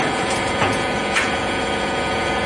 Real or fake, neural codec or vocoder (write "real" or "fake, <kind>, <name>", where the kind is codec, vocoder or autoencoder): fake, vocoder, Vocos